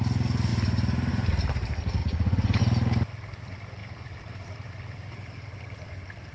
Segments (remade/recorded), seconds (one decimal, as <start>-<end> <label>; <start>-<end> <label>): 0.0-2.0 recorded; 2.0-2.6 remade; 2.6-6.3 recorded

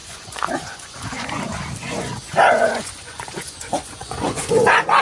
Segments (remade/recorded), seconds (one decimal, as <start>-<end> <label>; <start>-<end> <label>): 0.0-1.4 remade; 1.4-1.8 recorded; 1.8-5.0 remade